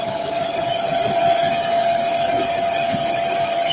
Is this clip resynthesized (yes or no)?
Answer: yes